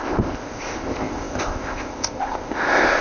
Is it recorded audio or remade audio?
remade